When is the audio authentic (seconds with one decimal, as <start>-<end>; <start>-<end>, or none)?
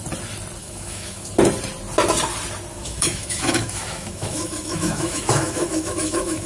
0.0-0.6; 1.3-2.7